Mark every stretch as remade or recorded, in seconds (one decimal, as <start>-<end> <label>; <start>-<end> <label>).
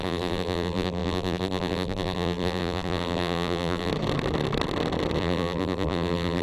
0.0-3.9 remade; 3.9-5.2 recorded; 5.2-6.4 remade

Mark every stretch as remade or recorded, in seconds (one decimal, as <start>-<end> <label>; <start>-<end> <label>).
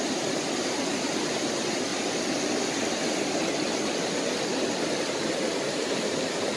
0.0-1.9 remade; 1.9-5.9 recorded; 5.9-6.6 remade